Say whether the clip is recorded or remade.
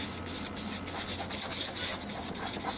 recorded